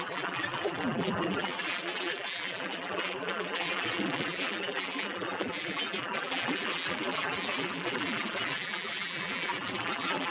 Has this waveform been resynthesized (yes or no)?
yes